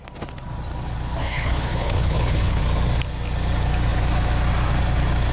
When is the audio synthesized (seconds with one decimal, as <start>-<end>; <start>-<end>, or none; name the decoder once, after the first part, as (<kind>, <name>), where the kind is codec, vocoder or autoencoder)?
1.2-2.6 (codec, HILCodec)

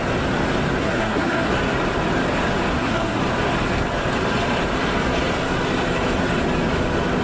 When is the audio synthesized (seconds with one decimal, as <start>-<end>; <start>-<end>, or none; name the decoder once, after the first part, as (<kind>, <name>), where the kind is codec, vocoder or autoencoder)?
0.8-1.5 (codec, SNAC); 2.7-3.2

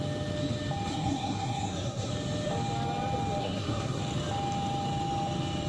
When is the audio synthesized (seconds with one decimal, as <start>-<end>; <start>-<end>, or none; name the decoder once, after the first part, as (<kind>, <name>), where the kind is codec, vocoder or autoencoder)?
0.9-2.1 (codec, SNAC); 3.4-4.0

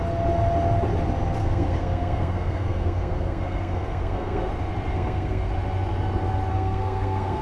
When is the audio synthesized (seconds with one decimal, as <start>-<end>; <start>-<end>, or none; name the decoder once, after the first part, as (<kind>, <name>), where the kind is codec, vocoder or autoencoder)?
1.4-4.5 (codec, SNAC); 4.9-5.5; 6.5-7.4